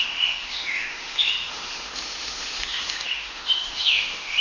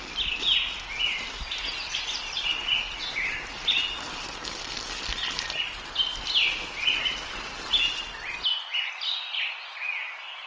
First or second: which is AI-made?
first